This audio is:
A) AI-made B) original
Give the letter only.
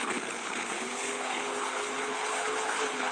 A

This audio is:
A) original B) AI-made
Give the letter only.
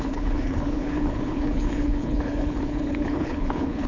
B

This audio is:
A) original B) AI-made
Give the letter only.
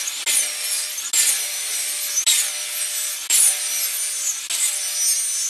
A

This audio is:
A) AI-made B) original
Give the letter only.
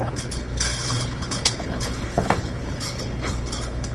A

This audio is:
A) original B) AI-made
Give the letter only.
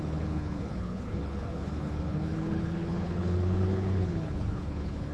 B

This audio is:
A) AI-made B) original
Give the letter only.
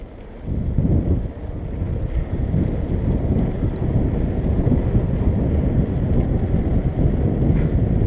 B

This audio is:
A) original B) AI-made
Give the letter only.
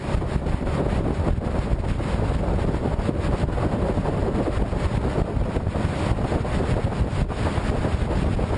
A